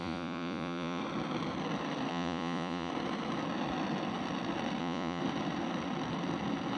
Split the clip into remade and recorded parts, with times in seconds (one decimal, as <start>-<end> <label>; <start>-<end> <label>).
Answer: 0.0-1.0 remade; 1.0-2.1 recorded; 2.1-2.9 remade; 2.9-4.8 recorded; 4.8-5.2 remade; 5.2-6.8 recorded